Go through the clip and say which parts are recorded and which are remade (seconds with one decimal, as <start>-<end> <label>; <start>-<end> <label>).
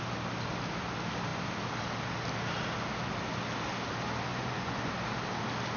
0.0-4.3 recorded; 4.3-4.9 remade; 4.9-5.8 recorded